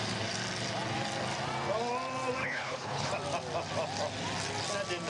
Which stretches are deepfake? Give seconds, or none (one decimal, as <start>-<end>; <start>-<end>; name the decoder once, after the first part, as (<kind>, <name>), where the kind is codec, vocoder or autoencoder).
2.4-3.1 (codec, HILCodec)